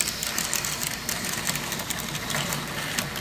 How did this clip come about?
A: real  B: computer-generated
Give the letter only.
A